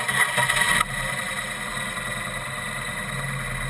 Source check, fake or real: real